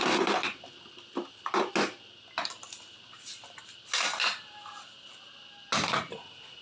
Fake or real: real